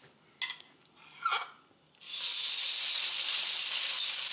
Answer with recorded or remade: recorded